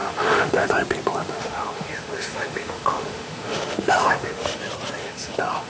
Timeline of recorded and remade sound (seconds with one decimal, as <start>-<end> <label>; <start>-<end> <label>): 0.0-0.7 remade; 0.7-1.2 recorded; 1.2-4.6 remade; 4.6-5.0 recorded; 5.0-5.7 remade